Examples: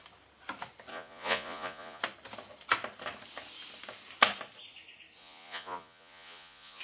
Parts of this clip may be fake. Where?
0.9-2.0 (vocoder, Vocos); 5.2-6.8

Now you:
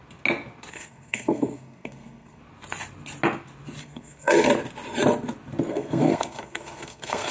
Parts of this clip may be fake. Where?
0.7-2.4 (codec, SNAC); 3.8-4.5; 5.7-7.3

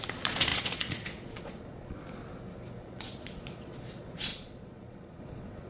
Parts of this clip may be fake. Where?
0.0-2.2 (vocoder, Vocos); 2.8-5.7

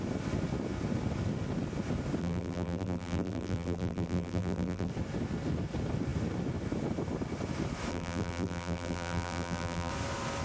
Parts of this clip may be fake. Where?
2.2-4.9 (vocoder, BigVGAN v2); 7.9-9.9

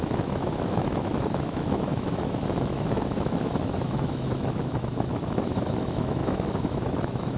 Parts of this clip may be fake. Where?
0.0-7.4 (autoencoder, DAC-VAE)

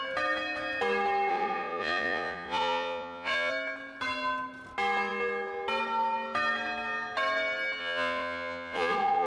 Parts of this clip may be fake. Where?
1.3-3.5 (vocoder, Vocos); 7.8-9.3

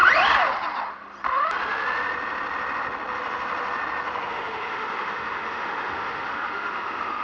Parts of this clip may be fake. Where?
4.3-7.2 (autoencoder, DAC-VAE)

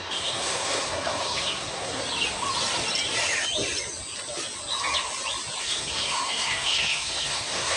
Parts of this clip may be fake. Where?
0.0-2.0 (codec, SNAC); 5.6-7.8